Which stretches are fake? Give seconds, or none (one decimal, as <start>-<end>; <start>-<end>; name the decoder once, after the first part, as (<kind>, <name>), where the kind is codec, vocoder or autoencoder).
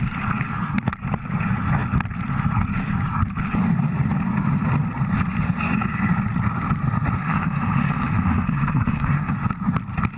7.2-9.3 (codec, SNAC)